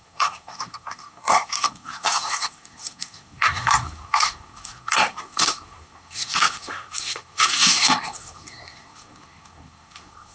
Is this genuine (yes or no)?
no